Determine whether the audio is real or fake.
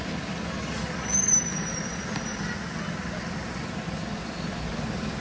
real